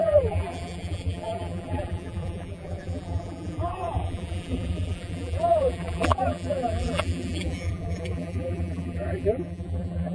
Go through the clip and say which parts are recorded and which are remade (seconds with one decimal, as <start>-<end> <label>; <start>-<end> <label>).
0.0-10.1 remade